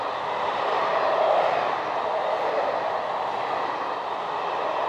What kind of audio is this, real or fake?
real